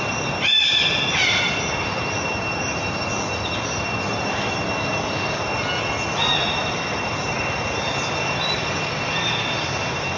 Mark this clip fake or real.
real